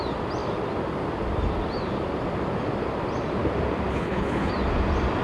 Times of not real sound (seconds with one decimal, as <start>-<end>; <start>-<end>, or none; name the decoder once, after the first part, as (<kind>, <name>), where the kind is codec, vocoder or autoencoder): 3.9-4.5 (codec, HILCodec)